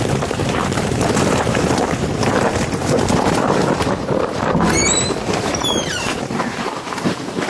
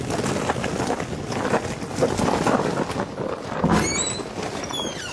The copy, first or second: first